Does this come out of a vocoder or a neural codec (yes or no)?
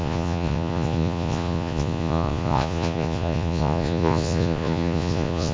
yes